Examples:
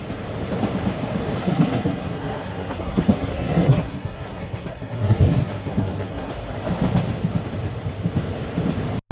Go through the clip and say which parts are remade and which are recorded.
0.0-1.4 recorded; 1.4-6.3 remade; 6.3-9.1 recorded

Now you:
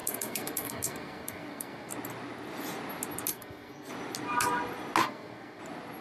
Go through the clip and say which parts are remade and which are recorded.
0.0-1.9 remade; 1.9-3.3 recorded; 3.3-3.9 remade; 3.9-5.0 recorded; 5.0-5.6 remade; 5.6-6.0 recorded

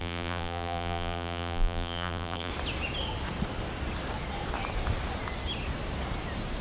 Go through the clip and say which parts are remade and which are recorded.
0.0-2.5 remade; 2.5-6.6 recorded

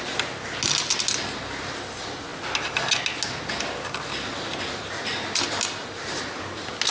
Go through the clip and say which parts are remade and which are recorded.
0.0-6.9 recorded

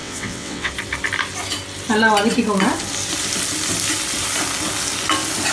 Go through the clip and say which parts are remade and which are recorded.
0.0-0.7 remade; 0.7-5.5 recorded

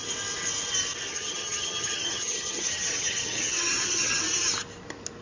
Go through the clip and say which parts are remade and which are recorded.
0.0-1.1 recorded; 1.1-4.2 remade; 4.2-5.2 recorded

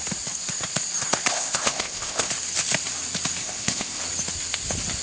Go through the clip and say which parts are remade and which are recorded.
0.0-1.3 recorded; 1.3-2.3 remade; 2.3-3.4 recorded; 3.4-4.0 remade; 4.0-5.0 recorded